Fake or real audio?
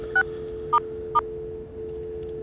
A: real